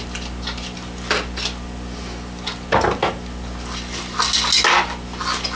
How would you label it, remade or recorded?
recorded